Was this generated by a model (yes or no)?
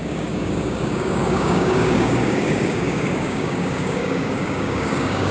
yes